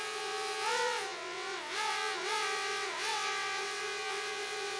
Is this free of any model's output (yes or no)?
no